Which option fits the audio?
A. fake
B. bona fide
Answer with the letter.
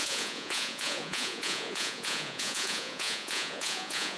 A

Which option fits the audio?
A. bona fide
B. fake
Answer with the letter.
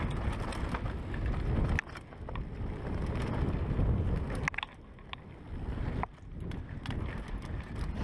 A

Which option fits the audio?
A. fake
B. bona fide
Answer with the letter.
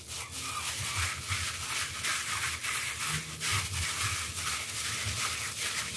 B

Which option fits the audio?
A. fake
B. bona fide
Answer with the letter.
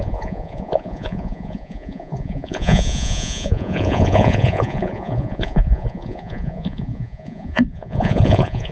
A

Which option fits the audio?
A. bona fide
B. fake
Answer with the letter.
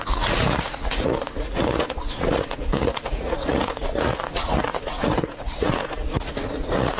B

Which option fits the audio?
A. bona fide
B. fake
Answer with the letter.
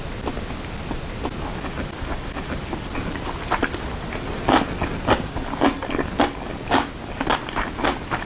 A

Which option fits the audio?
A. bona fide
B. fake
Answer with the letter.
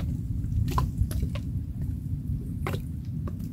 A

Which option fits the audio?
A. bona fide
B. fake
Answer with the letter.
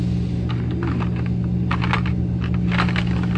A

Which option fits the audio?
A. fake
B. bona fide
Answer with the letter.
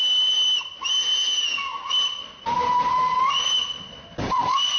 B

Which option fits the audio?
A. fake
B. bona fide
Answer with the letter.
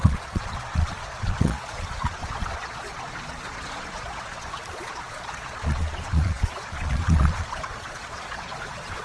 A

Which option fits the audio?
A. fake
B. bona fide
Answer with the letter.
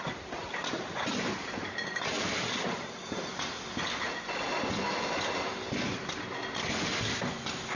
B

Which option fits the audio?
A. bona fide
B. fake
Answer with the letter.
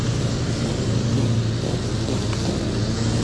A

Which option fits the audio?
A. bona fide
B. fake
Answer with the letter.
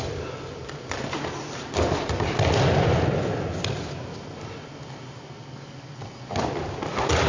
A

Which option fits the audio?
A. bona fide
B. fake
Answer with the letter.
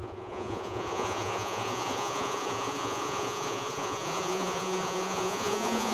B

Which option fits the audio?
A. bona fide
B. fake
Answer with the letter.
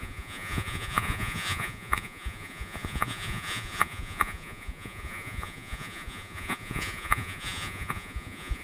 B